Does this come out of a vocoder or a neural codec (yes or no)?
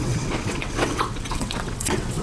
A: yes